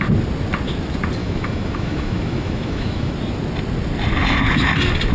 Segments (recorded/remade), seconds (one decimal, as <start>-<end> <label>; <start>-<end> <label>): 0.0-1.2 recorded; 1.2-3.1 remade; 3.1-5.1 recorded